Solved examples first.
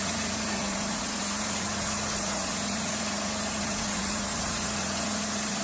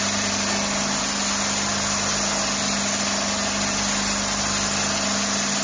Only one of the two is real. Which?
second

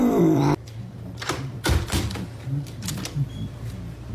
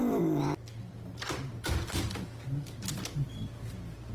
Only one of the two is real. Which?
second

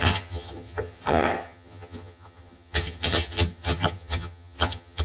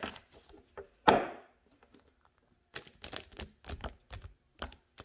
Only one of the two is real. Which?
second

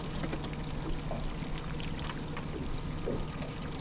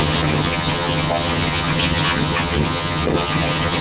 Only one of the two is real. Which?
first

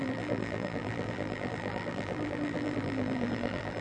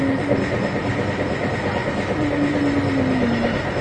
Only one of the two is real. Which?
second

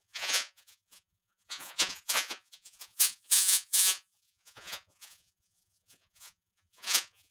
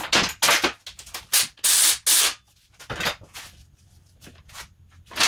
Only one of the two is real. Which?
second